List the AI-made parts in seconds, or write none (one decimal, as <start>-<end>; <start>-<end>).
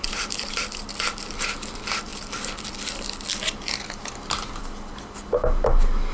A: none